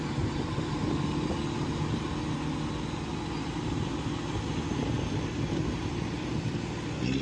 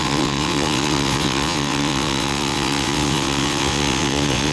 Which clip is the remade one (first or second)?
second